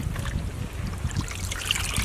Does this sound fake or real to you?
real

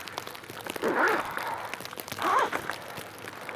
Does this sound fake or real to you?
real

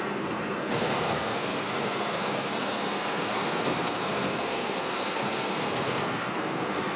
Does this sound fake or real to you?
fake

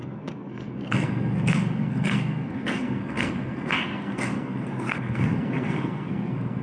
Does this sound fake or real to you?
fake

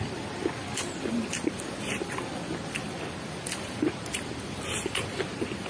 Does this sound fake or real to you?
real